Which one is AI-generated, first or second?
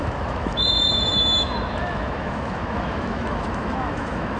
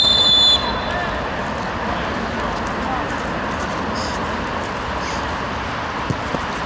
first